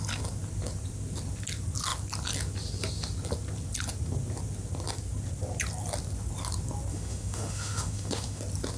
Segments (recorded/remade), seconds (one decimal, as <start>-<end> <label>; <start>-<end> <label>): 0.0-6.9 recorded; 6.9-8.4 remade; 8.4-8.8 recorded